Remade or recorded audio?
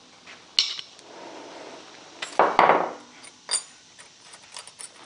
recorded